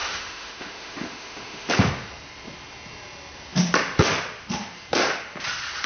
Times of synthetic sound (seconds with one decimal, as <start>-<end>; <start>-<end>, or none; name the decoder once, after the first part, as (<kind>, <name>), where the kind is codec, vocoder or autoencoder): 0.0-1.7 (autoencoder, DAC-VAE)